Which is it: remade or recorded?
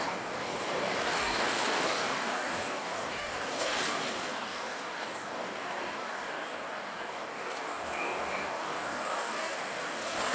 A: remade